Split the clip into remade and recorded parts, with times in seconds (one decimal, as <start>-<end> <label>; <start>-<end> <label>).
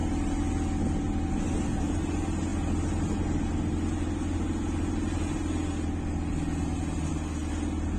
0.0-8.0 recorded